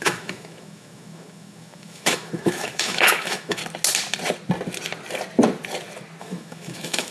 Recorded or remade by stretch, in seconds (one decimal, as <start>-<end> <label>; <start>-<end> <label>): 0.0-3.6 remade; 3.6-6.2 recorded; 6.2-7.1 remade